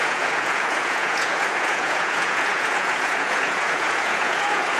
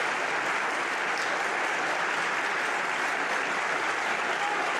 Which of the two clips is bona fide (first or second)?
second